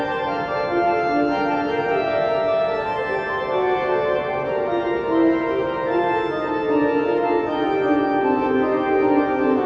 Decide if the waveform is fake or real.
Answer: real